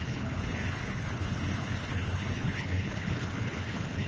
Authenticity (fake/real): fake